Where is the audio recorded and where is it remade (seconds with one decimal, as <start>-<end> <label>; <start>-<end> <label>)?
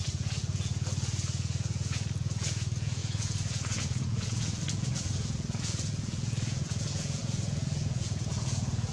0.0-8.9 remade